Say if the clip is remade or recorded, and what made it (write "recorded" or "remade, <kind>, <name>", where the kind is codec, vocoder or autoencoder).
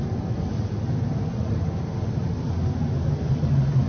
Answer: recorded